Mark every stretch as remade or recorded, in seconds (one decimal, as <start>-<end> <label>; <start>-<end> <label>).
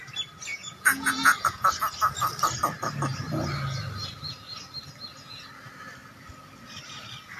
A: 0.0-0.5 recorded; 0.5-1.7 remade; 1.7-7.4 recorded